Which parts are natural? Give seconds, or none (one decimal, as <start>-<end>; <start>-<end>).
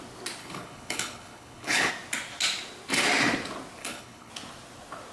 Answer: 0.0-0.4; 1.9-3.8; 4.3-5.1